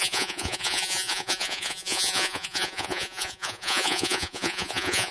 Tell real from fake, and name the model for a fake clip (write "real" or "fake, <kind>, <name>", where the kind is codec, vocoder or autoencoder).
fake, vocoder, Vocos